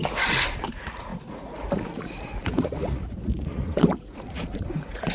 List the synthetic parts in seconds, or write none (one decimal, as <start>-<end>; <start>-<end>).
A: 0.7-5.1